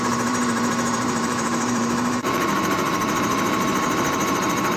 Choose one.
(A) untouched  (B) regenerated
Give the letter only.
B